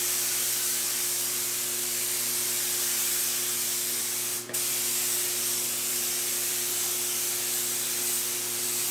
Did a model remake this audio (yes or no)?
yes